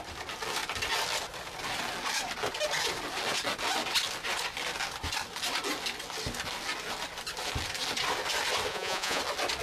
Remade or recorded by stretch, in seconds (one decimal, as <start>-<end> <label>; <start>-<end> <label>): 0.0-8.7 recorded; 8.7-9.2 remade; 9.2-9.6 recorded